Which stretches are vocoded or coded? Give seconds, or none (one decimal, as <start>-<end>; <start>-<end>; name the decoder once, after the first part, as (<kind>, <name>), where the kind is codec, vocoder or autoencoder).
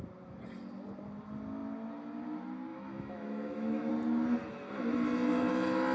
2.7-3.9 (autoencoder, DAC-VAE)